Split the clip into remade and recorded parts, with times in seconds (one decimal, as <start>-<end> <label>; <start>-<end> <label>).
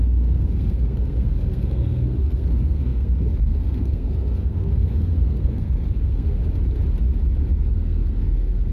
0.0-6.4 remade; 6.4-7.4 recorded; 7.4-8.7 remade